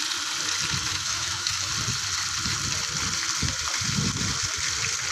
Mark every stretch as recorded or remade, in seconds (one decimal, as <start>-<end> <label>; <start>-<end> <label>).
0.0-0.9 recorded; 0.9-1.7 remade; 1.7-5.1 recorded